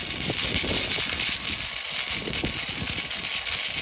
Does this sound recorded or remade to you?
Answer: recorded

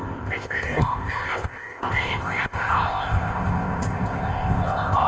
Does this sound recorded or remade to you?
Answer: remade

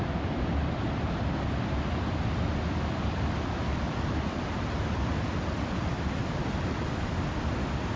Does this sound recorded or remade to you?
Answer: recorded